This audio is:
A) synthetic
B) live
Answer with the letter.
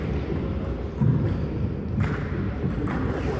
B